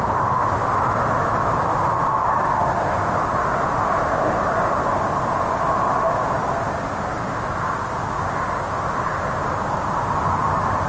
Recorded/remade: recorded